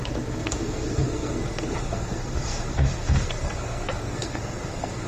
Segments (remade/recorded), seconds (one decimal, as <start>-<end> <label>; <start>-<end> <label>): 0.0-5.1 remade